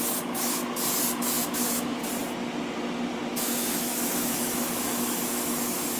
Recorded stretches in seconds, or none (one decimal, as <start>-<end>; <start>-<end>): 0.6-1.1; 2.0-3.4